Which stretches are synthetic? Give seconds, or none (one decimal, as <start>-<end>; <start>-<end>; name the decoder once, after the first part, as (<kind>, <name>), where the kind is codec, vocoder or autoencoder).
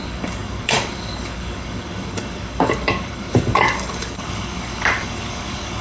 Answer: 0.0-5.8 (codec, DAC)